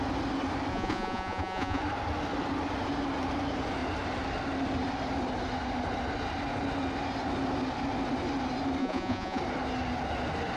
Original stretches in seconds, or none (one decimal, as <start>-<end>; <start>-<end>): 0.0-0.7; 1.8-8.8; 9.4-10.6